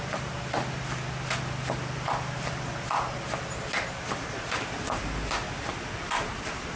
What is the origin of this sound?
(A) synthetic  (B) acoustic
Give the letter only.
B